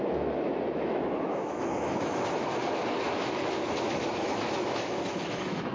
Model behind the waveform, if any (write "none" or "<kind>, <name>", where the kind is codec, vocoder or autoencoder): autoencoder, DAC-VAE